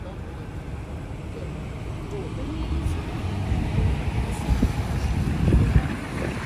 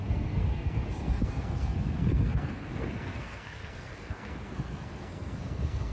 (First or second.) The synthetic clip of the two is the second